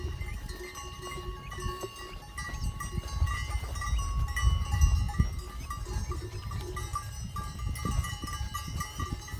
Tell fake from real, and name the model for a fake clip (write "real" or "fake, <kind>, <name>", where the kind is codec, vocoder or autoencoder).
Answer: real